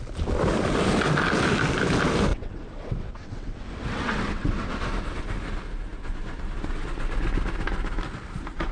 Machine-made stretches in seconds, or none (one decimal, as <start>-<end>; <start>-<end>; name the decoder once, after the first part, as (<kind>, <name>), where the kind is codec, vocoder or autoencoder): 2.3-4.8 (vocoder, WaveNeXt)